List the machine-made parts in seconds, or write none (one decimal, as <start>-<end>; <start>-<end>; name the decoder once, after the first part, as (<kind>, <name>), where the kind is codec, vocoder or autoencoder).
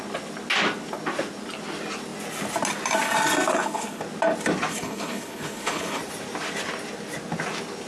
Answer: 3.5-4.0 (codec, HILCodec); 4.7-6.0